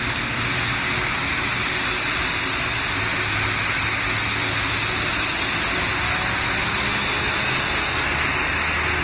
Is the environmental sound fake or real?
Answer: real